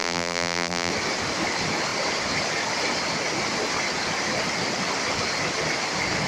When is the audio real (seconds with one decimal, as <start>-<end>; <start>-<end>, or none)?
0.9-6.3

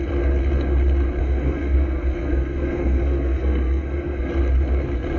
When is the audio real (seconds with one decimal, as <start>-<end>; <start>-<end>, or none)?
0.0-1.2; 4.3-5.2

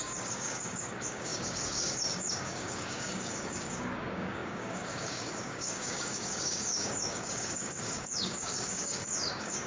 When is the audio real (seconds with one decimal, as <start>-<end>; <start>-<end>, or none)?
none

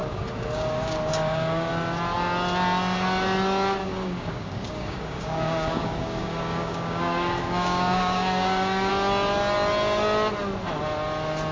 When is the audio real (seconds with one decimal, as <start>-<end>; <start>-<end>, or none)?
1.7-3.8; 8.9-11.5

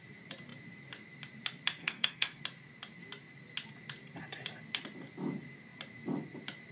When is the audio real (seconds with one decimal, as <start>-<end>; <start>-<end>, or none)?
0.0-1.8; 2.4-6.7

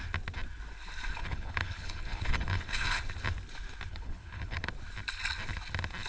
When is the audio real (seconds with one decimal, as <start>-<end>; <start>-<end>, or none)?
0.0-1.1; 3.0-3.9; 4.7-6.1

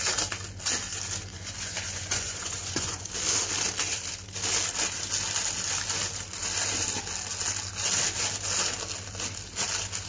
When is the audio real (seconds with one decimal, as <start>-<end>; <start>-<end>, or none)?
0.0-1.3; 3.1-10.1

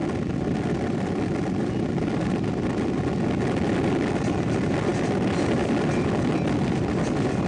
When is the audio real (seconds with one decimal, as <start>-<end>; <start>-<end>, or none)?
0.0-7.5